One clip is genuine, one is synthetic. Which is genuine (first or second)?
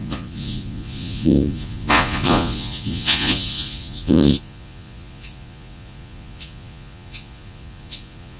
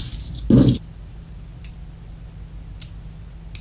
second